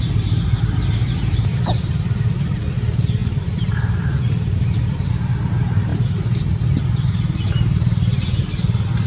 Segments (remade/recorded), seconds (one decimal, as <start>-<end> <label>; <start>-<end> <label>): 0.0-1.0 recorded; 1.0-2.2 remade; 2.2-3.2 recorded; 3.2-5.1 remade; 5.1-9.1 recorded